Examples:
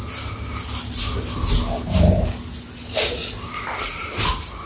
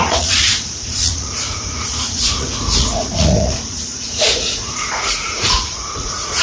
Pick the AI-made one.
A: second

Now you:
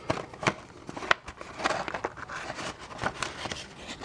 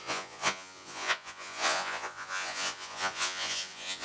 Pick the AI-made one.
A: second